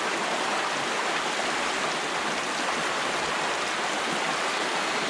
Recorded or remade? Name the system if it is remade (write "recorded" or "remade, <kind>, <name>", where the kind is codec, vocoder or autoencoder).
recorded